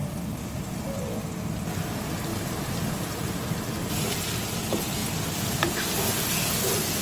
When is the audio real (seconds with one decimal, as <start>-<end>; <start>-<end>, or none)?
1.2-2.3; 3.3-7.0